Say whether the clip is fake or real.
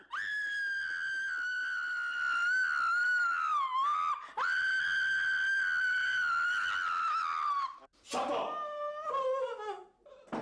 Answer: real